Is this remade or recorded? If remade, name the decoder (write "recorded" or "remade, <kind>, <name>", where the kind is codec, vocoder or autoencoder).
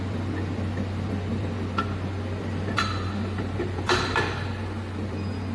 recorded